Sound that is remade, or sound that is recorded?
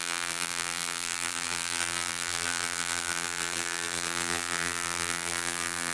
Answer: remade